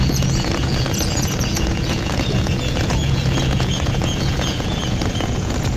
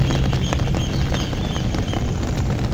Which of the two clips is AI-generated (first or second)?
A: first